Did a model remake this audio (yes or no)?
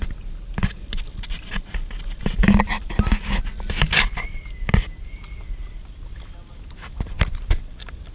no